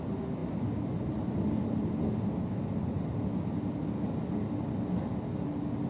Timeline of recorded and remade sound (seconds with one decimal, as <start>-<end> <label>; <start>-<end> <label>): 0.0-5.9 recorded